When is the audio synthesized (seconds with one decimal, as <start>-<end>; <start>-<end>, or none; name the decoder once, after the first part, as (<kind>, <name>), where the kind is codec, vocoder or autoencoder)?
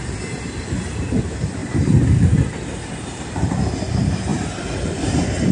none